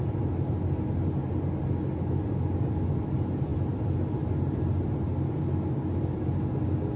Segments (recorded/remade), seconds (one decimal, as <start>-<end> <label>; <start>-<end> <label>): 0.0-7.0 recorded